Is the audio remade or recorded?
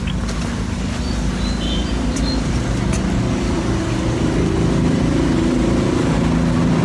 recorded